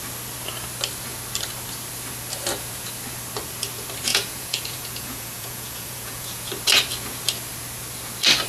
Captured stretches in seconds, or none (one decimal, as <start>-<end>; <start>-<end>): 0.0-4.1; 6.5-8.5